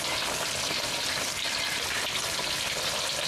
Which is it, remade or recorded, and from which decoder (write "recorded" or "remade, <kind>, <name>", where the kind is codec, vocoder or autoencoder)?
recorded